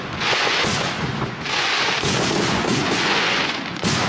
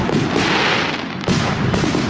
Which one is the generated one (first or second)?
first